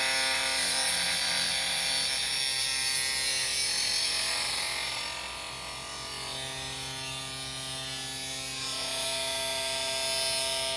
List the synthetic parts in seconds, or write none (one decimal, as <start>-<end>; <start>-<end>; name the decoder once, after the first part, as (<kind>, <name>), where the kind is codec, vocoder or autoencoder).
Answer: none